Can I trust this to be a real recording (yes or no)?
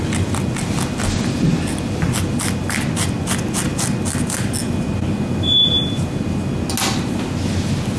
yes